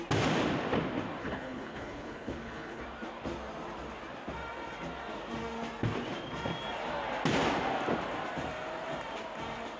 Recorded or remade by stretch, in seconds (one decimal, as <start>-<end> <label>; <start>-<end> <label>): 0.0-1.2 recorded; 1.2-2.8 remade; 2.8-9.8 recorded